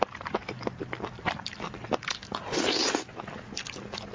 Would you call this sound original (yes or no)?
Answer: yes